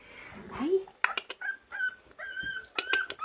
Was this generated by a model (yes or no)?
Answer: no